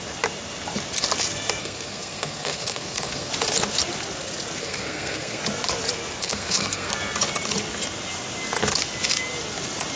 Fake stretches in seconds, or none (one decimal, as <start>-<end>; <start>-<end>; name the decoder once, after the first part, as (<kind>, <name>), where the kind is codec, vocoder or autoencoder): 1.6-3.3 (codec, SNAC); 4.6-5.4; 6.2-6.9